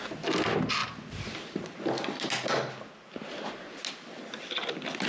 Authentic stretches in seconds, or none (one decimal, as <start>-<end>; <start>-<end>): 0.0-5.1

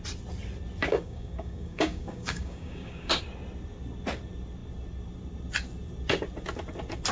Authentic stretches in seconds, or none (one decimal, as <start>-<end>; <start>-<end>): 0.0-0.8; 3.2-7.1

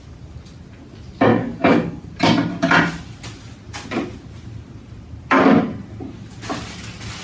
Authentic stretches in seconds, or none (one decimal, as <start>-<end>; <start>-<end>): 0.0-1.3; 2.0-7.2

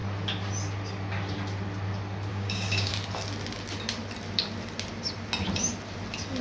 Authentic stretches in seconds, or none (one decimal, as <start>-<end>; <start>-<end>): 0.0-2.3; 2.9-6.4

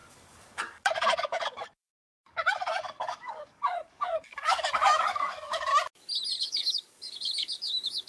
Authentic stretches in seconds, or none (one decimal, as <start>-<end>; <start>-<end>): 5.7-6.4

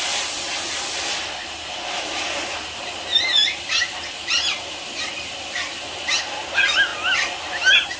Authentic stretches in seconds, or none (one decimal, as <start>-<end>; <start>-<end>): 0.0-8.0

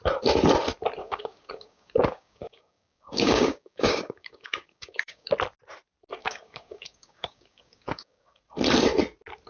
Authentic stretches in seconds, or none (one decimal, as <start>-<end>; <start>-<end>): 0.0-1.0; 5.3-6.2; 8.4-9.5

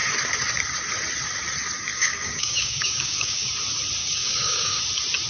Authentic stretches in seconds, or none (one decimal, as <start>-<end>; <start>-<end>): 0.0-1.9; 3.5-4.0; 4.8-5.3